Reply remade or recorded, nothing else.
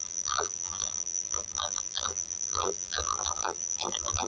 remade